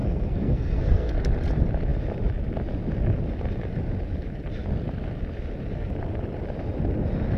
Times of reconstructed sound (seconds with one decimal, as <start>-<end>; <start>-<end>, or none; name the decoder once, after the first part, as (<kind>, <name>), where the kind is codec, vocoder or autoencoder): 0.0-1.1 (codec, SNAC)